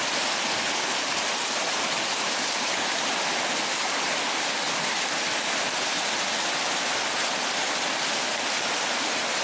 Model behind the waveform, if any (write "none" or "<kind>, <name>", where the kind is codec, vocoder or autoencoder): none